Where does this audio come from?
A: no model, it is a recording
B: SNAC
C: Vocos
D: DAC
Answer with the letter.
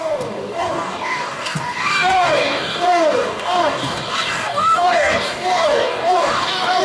D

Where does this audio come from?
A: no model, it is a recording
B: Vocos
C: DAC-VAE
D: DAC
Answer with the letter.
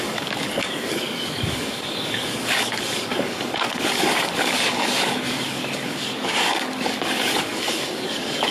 D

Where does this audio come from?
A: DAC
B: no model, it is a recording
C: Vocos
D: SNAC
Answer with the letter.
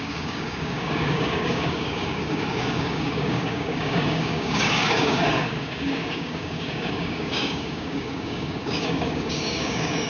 A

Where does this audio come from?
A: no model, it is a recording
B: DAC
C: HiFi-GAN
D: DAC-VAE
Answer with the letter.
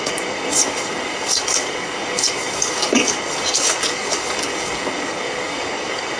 B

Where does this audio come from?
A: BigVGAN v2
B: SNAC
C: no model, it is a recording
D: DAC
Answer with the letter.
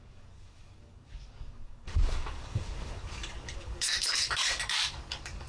D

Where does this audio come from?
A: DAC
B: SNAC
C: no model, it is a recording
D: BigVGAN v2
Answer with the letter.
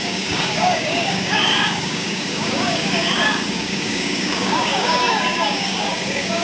A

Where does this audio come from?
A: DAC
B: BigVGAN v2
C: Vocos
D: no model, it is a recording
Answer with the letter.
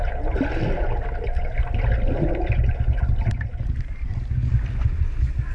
D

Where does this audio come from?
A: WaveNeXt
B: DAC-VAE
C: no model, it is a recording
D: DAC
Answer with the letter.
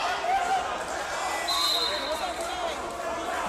C